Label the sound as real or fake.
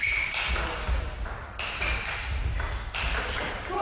real